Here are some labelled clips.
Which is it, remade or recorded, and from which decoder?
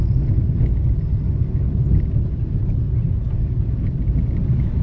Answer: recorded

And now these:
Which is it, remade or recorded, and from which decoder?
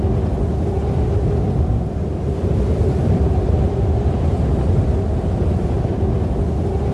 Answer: recorded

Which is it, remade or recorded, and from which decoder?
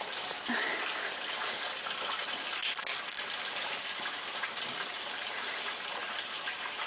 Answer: recorded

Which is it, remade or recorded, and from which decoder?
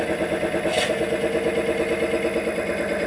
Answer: recorded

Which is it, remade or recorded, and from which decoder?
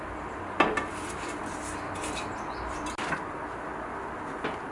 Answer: recorded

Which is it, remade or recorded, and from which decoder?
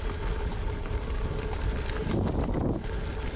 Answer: recorded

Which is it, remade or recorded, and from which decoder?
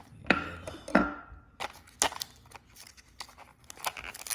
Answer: recorded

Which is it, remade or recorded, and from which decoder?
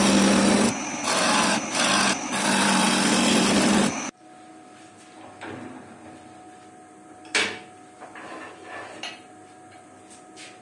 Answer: recorded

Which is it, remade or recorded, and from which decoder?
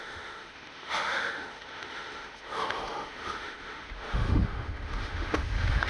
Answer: remade, autoencoder, DAC-VAE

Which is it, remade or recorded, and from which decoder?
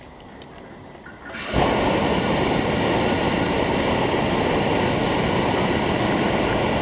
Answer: recorded